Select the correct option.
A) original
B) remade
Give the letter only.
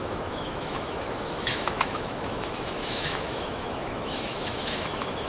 B